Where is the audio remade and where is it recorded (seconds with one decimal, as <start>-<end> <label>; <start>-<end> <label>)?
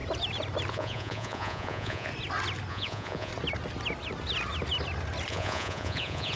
0.0-0.7 recorded; 0.7-2.1 remade; 2.1-2.7 recorded; 2.7-3.3 remade; 3.3-5.3 recorded; 5.3-6.4 remade